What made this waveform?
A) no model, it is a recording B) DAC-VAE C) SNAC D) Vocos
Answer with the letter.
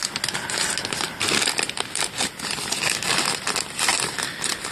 A